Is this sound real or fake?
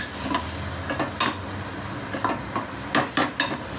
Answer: real